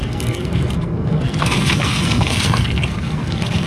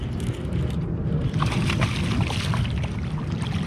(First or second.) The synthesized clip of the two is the first